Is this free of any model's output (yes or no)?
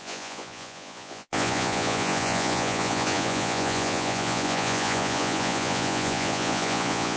no